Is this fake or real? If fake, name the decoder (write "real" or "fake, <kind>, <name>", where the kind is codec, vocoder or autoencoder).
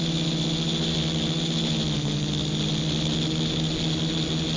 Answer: real